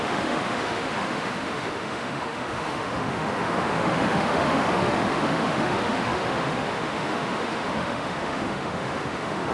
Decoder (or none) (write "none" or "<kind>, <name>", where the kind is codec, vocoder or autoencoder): autoencoder, DAC-VAE